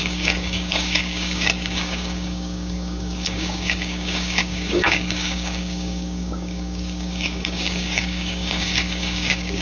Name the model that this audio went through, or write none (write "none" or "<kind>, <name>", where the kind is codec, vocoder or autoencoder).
codec, DAC